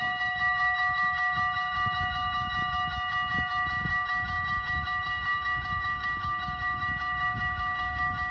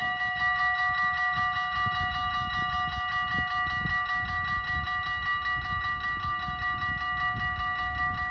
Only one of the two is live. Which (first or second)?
second